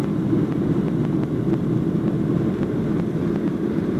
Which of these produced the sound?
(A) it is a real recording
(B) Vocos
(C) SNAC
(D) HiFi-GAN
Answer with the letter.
A